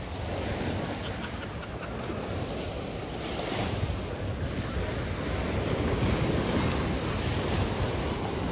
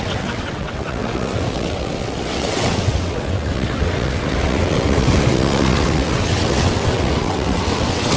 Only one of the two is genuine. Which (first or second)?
first